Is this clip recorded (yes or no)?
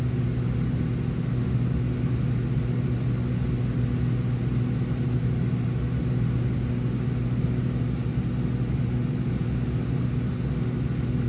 yes